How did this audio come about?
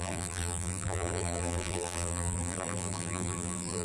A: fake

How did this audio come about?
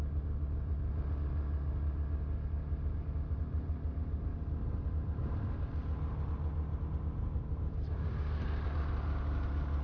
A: real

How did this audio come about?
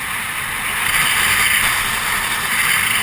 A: real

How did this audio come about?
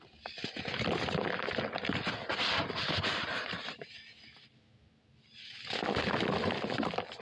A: real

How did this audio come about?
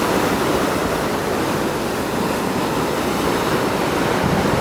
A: fake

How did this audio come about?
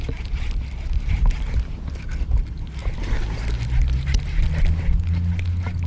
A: real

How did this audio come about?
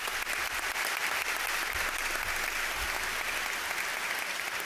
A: real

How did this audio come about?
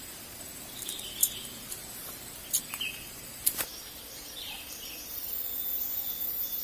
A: fake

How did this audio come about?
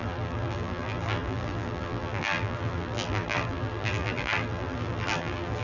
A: fake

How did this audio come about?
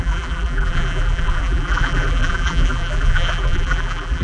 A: fake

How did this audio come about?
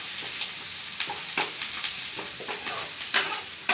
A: real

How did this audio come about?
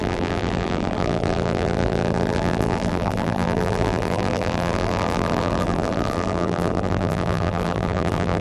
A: fake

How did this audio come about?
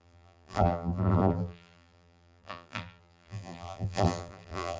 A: fake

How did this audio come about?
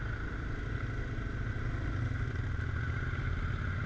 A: real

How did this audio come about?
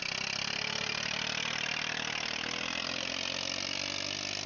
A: real